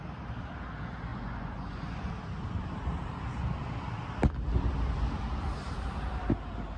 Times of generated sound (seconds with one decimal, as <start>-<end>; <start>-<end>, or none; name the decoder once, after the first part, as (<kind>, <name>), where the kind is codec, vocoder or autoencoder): 1.1-2.1 (vocoder, Vocos)